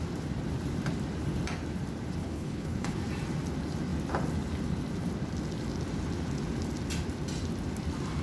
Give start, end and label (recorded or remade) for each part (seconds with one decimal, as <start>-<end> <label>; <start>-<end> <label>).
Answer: 0.0-2.2 recorded; 2.2-3.0 remade; 3.0-8.2 recorded

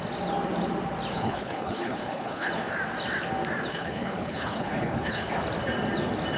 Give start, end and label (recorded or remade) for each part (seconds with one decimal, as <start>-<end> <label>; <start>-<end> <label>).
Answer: 0.0-1.1 recorded; 1.1-2.5 remade; 2.5-3.7 recorded; 3.7-5.3 remade; 5.3-6.4 recorded

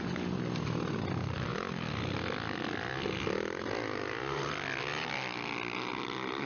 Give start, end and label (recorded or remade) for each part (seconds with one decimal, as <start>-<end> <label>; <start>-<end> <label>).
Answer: 0.0-6.5 recorded

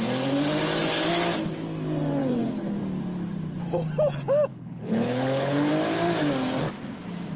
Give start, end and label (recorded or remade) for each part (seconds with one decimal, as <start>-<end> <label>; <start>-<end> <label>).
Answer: 0.0-2.2 recorded; 2.2-2.8 remade; 2.8-4.5 recorded; 4.5-5.7 remade; 5.7-7.4 recorded